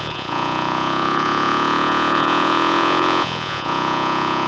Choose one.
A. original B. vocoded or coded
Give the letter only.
B